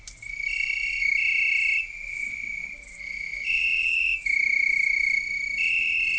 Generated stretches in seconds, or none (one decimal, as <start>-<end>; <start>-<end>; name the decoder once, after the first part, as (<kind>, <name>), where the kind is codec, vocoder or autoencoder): none